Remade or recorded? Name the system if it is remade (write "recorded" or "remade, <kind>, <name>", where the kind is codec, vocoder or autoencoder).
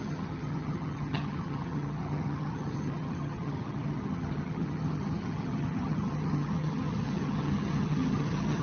remade, vocoder, HiFi-GAN